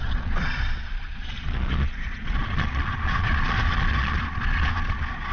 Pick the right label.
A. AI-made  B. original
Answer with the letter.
A